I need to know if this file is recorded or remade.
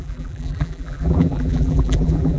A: remade